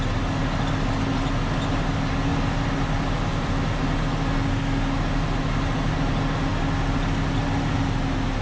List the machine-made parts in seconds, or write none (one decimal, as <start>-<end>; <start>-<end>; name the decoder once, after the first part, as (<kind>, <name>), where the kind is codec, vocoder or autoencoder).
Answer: none